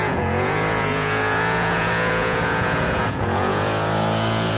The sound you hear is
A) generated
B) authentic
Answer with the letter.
A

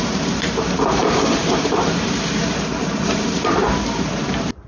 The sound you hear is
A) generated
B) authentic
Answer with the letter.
A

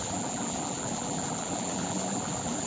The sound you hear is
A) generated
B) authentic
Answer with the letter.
A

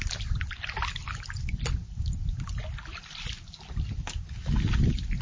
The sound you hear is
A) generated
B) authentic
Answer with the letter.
B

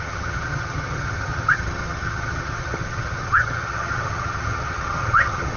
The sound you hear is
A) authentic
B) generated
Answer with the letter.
B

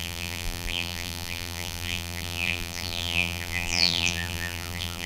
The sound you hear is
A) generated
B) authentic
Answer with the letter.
A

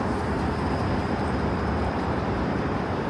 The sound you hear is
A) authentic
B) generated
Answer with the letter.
B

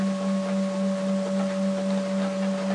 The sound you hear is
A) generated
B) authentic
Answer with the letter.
B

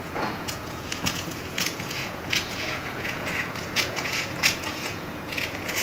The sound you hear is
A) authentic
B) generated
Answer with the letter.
B